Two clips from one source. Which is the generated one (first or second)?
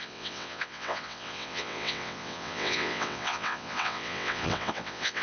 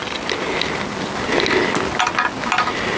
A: first